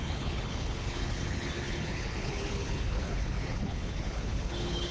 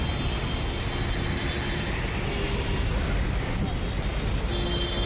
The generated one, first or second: first